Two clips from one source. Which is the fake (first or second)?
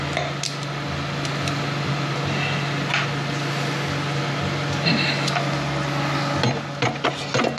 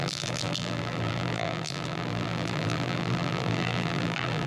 second